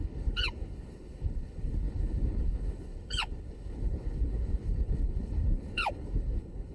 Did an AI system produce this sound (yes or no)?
yes